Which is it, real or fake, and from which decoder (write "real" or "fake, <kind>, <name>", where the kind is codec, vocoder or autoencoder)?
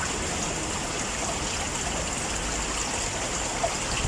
real